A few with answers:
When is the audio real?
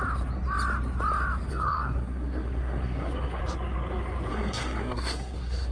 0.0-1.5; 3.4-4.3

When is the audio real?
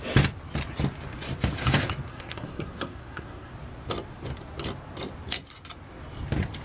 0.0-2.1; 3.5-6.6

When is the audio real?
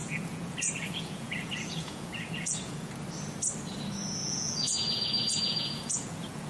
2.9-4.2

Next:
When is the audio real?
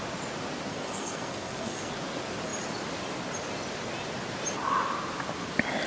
0.0-0.7; 1.9-5.9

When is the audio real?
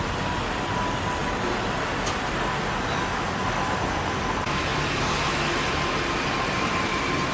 0.0-7.3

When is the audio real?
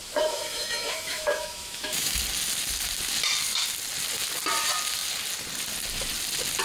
2.2-6.6